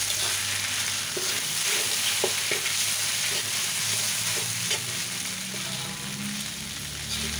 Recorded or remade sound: recorded